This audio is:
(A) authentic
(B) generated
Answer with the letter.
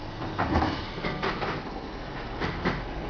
B